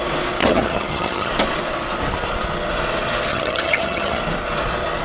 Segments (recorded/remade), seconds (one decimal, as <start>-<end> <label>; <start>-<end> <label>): 0.0-0.4 recorded; 0.4-1.3 remade; 1.3-3.3 recorded; 3.3-4.2 remade; 4.2-5.0 recorded